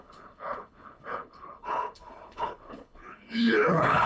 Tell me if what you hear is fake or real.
fake